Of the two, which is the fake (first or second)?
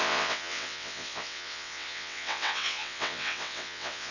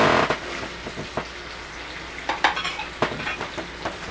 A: first